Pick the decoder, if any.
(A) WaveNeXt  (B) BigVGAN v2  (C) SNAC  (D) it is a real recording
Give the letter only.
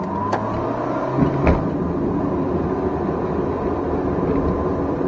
D